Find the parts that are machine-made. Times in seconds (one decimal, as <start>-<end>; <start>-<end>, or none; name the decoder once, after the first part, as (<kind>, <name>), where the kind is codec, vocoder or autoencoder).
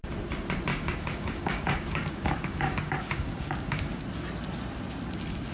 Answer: 0.7-4.0 (codec, DAC)